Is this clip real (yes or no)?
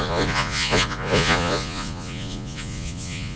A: no